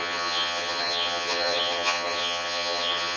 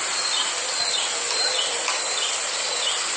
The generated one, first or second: first